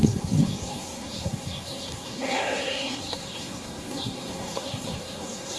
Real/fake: fake